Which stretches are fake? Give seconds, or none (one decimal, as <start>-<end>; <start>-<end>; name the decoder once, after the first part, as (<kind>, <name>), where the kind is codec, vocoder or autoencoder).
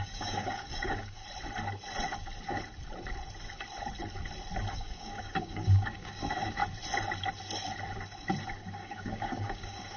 0.0-1.2 (codec, DAC); 4.7-6.6; 8.6-10.0